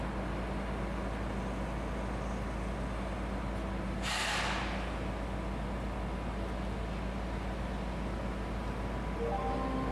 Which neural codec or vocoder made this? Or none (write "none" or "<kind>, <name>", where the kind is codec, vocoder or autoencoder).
none